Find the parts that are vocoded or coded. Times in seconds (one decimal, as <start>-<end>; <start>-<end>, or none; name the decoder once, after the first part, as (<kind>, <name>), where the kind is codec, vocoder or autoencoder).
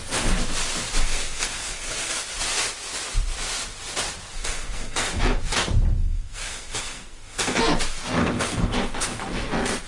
1.0-2.2 (codec, SNAC); 4.3-5.2; 6.0-7.6; 8.2-9.5